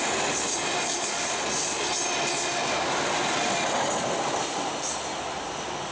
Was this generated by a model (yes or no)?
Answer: no